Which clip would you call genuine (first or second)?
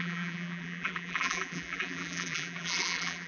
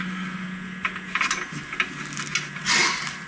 second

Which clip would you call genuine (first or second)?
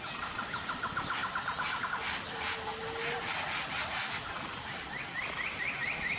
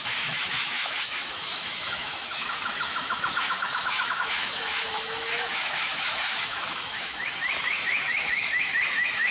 first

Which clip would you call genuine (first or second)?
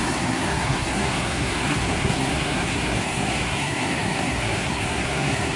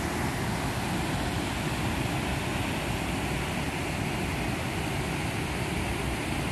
second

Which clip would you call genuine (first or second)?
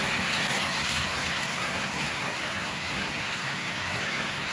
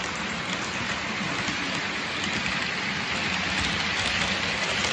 second